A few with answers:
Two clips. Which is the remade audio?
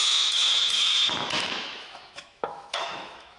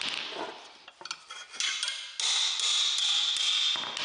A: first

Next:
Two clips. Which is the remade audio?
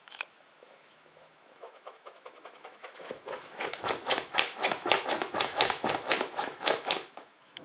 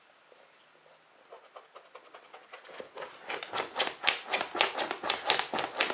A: first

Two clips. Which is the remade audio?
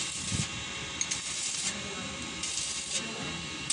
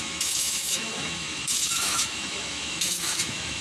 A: second